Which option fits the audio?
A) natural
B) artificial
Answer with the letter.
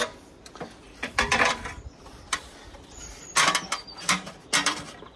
A